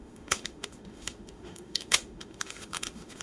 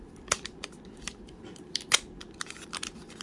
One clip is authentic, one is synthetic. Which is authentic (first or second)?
second